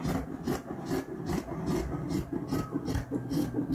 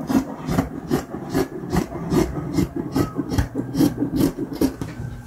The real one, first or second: first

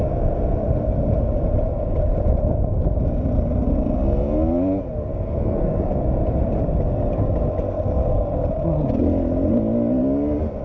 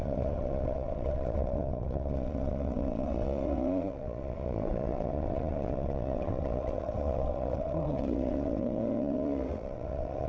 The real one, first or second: first